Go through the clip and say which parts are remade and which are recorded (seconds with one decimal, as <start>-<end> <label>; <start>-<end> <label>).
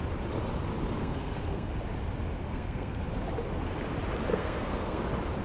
0.0-1.0 recorded; 1.0-1.7 remade; 1.7-2.5 recorded; 2.5-3.0 remade; 3.0-4.3 recorded; 4.3-5.0 remade; 5.0-5.4 recorded